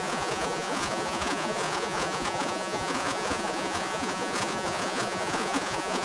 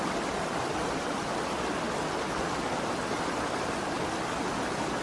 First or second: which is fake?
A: first